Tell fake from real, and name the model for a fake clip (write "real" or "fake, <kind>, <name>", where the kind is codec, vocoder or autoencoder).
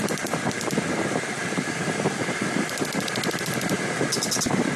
real